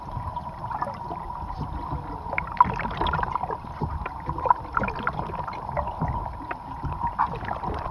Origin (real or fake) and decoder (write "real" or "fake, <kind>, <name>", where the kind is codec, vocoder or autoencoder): real